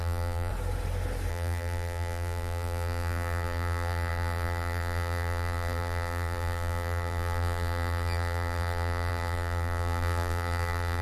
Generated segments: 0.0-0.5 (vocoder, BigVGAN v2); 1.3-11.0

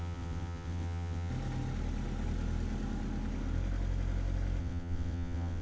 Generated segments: 0.0-1.3 (vocoder, WaveNeXt); 4.6-5.6

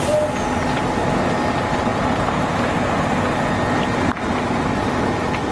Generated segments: 3.9-4.8 (vocoder, BigVGAN v2)